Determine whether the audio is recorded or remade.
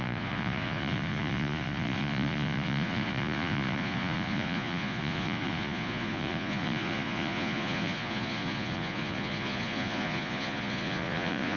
remade